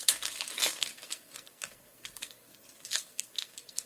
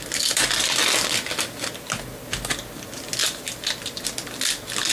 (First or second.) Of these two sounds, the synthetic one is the first